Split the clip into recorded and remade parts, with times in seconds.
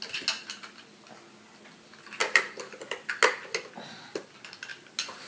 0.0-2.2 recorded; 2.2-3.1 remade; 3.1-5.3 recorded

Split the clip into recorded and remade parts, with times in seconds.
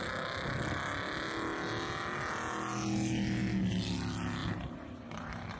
0.0-4.4 recorded; 4.4-5.6 remade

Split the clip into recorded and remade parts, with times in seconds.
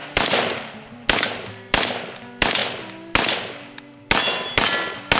0.0-5.2 recorded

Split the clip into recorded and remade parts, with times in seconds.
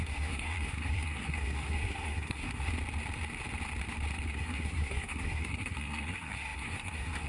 0.0-2.7 remade; 2.7-4.3 recorded; 4.3-7.3 remade